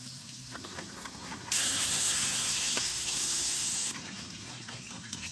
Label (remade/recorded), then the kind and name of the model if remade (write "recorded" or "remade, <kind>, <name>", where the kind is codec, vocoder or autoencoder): remade, codec, SNAC